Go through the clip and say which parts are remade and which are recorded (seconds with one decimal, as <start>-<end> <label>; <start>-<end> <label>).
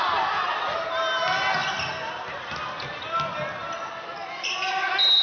0.0-5.2 recorded